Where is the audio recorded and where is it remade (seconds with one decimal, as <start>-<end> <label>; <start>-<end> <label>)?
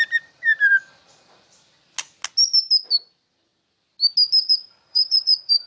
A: 0.0-0.5 remade; 0.5-3.1 recorded; 3.1-3.5 remade; 3.5-4.5 recorded; 4.5-5.7 remade